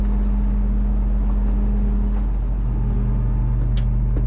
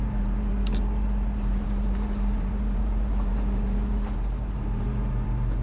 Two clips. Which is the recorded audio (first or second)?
first